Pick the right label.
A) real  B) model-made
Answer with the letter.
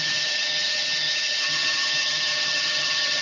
B